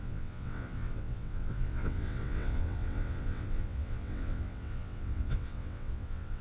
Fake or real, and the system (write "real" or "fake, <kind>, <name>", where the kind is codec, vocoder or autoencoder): fake, vocoder, WaveNeXt